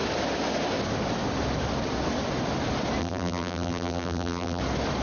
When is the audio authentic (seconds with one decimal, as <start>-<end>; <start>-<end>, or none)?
0.0-3.0; 4.6-5.0